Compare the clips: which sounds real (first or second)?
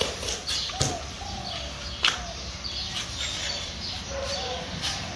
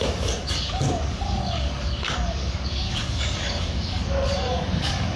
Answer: first